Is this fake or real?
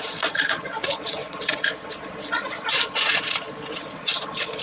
fake